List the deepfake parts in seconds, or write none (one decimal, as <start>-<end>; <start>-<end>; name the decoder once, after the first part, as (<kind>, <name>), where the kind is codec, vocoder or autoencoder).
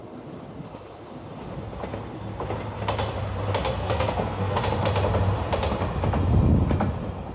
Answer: 3.8-4.6 (codec, SNAC)